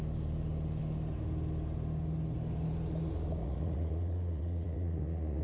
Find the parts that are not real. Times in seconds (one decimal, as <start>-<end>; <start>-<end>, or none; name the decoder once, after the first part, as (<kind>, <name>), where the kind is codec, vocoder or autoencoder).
3.4-5.4 (vocoder, Vocos)